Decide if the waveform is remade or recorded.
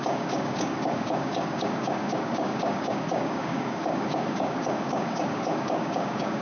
remade